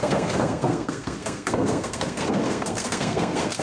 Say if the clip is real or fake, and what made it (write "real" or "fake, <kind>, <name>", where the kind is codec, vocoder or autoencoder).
fake, codec, SNAC